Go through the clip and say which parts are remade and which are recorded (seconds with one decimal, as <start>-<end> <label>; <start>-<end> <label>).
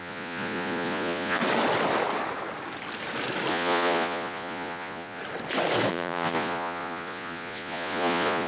0.0-1.4 remade; 1.4-3.5 recorded; 3.5-5.2 remade; 5.2-5.9 recorded; 5.9-8.5 remade